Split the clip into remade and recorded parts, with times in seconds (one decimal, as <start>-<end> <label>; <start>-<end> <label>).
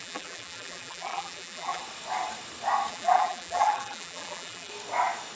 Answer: 0.0-1.8 remade; 1.8-2.9 recorded; 2.9-4.7 remade; 4.7-5.4 recorded